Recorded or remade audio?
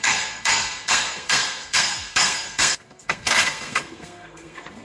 remade